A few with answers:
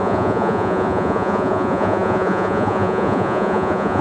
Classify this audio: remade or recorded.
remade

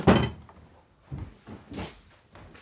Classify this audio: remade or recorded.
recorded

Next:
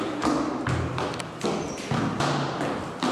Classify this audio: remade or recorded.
recorded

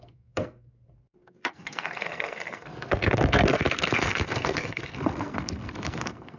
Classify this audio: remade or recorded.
remade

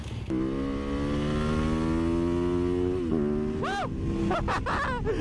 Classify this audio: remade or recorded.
recorded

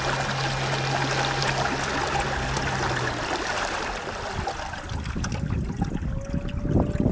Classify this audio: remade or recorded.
recorded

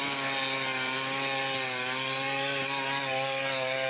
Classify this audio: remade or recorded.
recorded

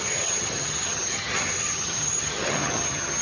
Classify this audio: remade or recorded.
remade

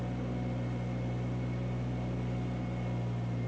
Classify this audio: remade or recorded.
recorded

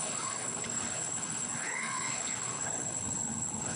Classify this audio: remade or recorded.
remade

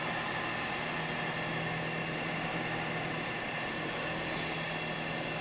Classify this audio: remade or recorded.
recorded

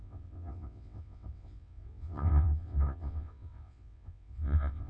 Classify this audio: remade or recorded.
remade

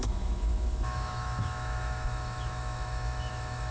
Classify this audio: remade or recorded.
remade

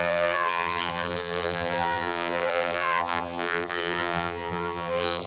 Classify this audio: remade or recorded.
remade